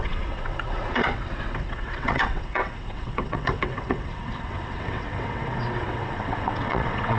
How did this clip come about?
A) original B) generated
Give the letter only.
B